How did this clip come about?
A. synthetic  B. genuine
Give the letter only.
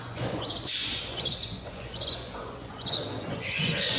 A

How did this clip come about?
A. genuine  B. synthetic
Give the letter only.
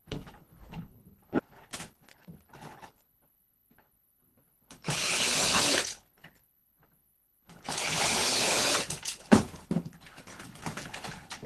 B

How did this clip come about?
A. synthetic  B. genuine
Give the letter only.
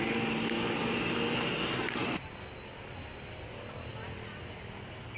B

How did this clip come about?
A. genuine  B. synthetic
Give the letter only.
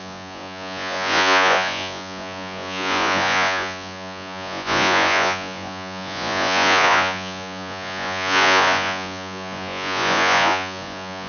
B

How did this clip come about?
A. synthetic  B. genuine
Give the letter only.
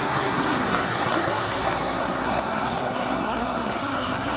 A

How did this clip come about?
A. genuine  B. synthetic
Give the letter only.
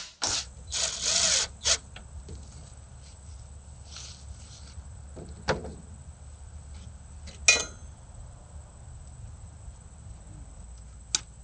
A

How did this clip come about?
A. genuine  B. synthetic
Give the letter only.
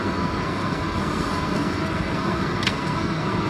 B